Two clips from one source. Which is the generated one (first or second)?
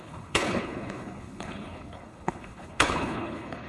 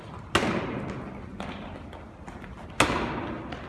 first